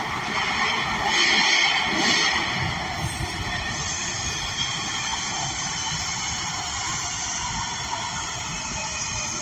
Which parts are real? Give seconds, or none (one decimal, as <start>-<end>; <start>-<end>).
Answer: 0.0-9.4